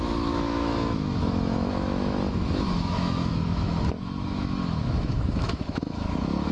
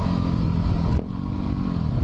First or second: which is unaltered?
second